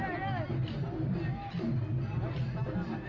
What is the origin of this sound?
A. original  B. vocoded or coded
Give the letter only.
A